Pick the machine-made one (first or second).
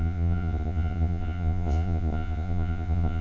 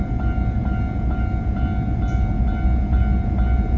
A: first